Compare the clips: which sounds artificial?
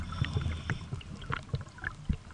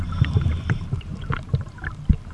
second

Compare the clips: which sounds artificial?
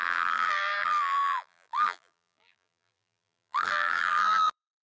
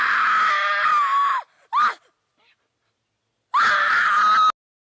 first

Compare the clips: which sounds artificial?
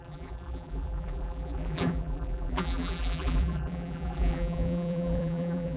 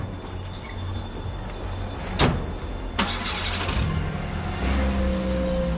first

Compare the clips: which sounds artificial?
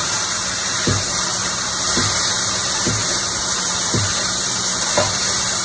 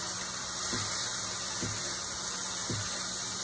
first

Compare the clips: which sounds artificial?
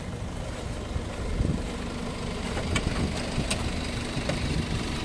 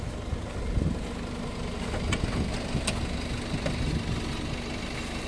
first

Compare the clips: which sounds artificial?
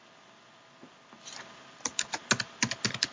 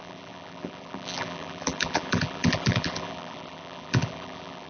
second